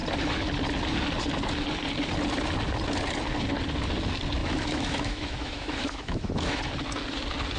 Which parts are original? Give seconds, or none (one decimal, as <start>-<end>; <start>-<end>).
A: 0.0-4.4; 6.6-7.6